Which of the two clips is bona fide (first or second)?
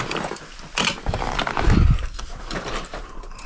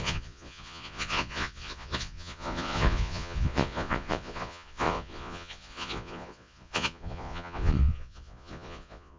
first